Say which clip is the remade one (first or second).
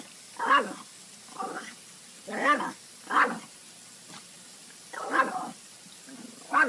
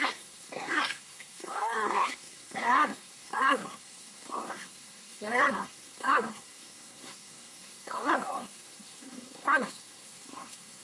second